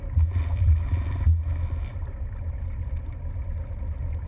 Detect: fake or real real